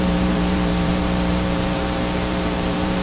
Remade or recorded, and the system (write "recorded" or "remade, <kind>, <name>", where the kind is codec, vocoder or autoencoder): remade, vocoder, BigVGAN v2